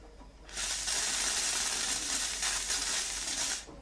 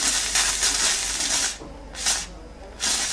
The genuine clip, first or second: second